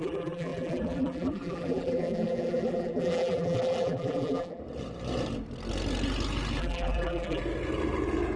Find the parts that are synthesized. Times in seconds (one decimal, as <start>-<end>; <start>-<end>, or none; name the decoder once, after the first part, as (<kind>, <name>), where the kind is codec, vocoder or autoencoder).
0.0-4.6 (vocoder, BigVGAN v2); 6.6-7.4